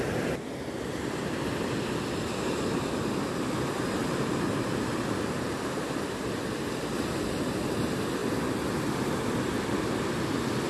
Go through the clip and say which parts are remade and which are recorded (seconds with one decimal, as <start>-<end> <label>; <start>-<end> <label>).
0.0-10.7 recorded